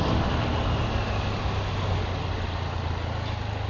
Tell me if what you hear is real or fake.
real